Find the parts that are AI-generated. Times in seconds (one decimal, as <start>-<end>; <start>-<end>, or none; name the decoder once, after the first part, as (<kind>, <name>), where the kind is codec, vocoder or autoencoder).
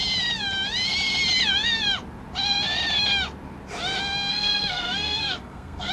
4.3-5.9 (codec, SNAC)